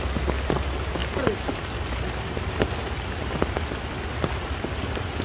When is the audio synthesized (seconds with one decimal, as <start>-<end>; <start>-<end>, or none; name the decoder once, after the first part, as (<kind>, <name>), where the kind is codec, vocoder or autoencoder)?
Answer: none